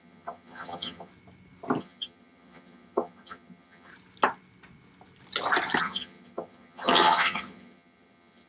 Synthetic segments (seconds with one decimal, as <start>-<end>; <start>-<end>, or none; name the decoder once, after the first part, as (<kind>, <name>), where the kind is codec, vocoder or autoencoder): 0.0-1.1 (vocoder, HiFi-GAN); 1.8-3.9; 5.8-8.5